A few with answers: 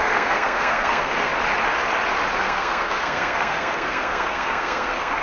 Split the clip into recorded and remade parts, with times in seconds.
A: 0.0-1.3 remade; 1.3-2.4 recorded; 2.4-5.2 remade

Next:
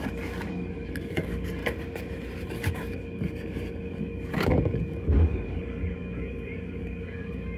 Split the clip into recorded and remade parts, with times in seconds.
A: 0.0-1.6 remade; 1.6-2.5 recorded; 2.5-7.6 remade